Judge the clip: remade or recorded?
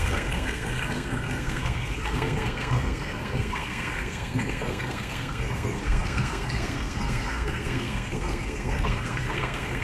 remade